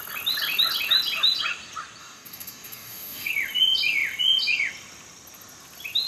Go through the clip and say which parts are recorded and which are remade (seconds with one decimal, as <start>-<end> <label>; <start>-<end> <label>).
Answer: 0.0-2.0 recorded; 2.0-3.3 remade; 3.3-6.1 recorded